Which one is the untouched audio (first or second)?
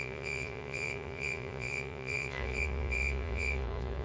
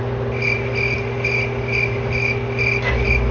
second